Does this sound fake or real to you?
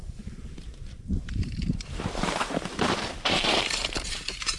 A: fake